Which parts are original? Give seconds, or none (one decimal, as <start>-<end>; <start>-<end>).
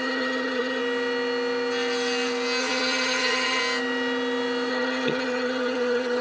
0.8-2.6; 3.6-4.7